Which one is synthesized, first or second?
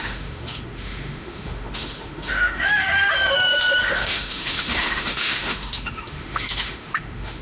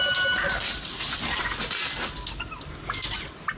first